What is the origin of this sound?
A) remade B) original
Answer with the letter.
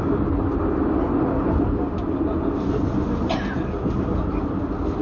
B